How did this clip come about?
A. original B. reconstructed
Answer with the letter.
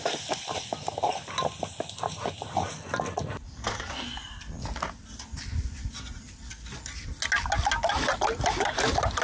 A